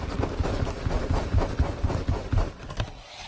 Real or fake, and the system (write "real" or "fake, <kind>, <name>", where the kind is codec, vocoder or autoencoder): real